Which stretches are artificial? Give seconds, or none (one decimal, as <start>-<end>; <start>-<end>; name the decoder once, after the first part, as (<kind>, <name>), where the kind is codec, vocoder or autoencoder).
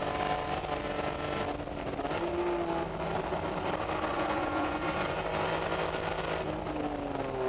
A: 4.1-5.2 (vocoder, Vocos)